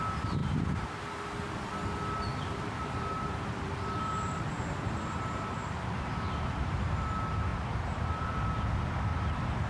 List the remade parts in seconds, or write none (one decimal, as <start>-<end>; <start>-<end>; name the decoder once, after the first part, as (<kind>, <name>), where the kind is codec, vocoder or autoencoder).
0.4-1.0 (vocoder, BigVGAN v2); 2.3-7.1; 7.5-8.2; 9.1-9.7